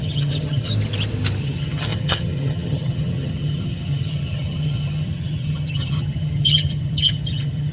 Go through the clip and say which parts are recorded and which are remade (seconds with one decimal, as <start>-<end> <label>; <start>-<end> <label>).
0.0-0.7 remade; 0.7-1.4 recorded; 1.4-7.7 remade

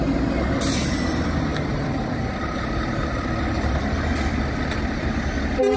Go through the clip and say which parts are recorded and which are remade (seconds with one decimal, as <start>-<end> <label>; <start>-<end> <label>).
0.0-1.5 recorded; 1.5-3.8 remade; 3.8-5.8 recorded

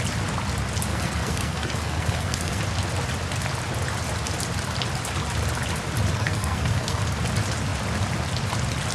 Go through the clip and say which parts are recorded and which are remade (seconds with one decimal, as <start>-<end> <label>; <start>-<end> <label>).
0.0-0.9 recorded; 0.9-2.6 remade; 2.6-6.1 recorded; 6.1-7.0 remade; 7.0-8.9 recorded

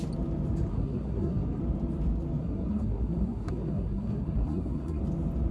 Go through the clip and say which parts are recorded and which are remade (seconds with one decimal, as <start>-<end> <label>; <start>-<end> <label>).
0.0-0.7 recorded; 0.7-1.6 remade; 1.6-2.4 recorded; 2.4-5.0 remade; 5.0-5.5 recorded

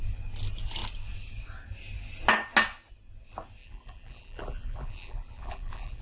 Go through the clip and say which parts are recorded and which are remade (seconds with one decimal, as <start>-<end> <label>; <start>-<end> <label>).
0.0-3.6 recorded; 3.6-6.0 remade

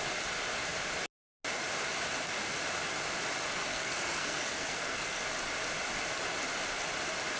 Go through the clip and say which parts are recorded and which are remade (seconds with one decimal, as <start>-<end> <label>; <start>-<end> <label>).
0.0-3.6 recorded; 3.6-5.2 remade; 5.2-7.4 recorded

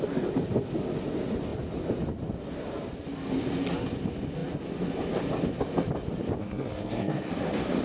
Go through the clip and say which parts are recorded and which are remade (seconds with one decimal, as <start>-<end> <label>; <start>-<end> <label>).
0.0-6.4 recorded; 6.4-7.3 remade; 7.3-7.8 recorded